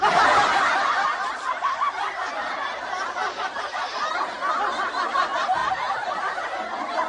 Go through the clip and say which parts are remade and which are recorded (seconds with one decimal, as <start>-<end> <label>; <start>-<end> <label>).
0.0-7.1 recorded

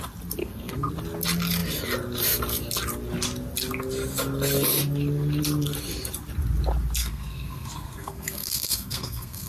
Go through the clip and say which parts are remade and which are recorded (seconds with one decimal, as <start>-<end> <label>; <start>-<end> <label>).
0.0-0.4 recorded; 0.4-0.9 remade; 0.9-7.0 recorded; 7.0-9.5 remade

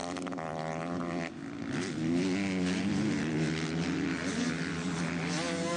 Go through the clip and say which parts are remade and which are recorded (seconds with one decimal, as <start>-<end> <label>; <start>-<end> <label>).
0.0-5.8 recorded

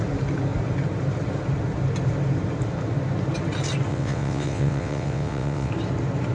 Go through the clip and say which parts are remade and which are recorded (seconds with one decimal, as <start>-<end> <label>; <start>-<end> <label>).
0.0-3.9 recorded; 3.9-5.7 remade; 5.7-6.3 recorded

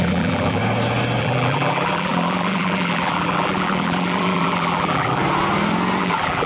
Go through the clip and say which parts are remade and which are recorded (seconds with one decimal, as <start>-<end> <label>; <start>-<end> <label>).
0.0-0.6 remade; 0.6-1.2 recorded; 1.2-5.2 remade; 5.2-6.0 recorded; 6.0-6.5 remade

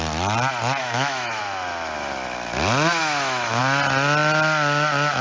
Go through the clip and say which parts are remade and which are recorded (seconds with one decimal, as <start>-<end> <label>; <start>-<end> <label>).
0.0-0.8 recorded; 0.8-1.4 remade; 1.4-3.0 recorded; 3.0-3.6 remade; 3.6-5.2 recorded